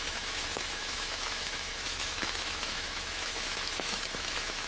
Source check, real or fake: fake